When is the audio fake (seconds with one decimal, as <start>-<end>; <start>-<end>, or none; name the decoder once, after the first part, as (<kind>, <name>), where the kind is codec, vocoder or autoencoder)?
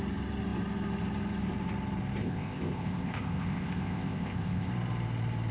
2.2-4.7 (codec, ZipCodec)